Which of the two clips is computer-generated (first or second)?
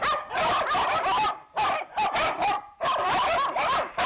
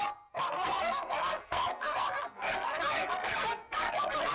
second